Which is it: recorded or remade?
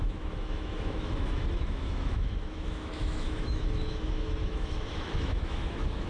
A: remade